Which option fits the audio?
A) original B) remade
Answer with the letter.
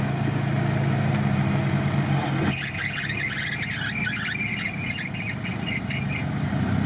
A